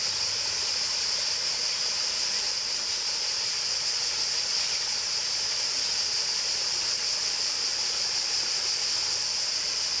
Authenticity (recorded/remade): recorded